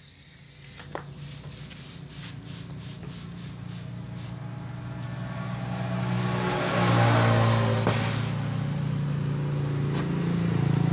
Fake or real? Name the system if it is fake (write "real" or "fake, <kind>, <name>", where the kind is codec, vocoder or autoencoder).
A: real